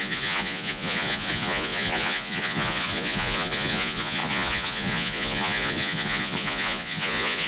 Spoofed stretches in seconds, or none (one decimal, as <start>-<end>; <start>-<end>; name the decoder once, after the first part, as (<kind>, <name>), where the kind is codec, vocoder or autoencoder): 0.0-7.5 (vocoder, Vocos)